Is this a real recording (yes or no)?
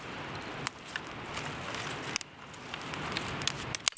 yes